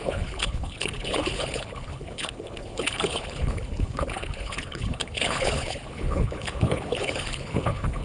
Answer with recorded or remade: remade